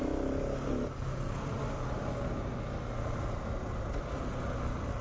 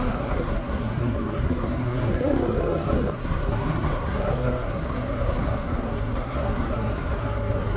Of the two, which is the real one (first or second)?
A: first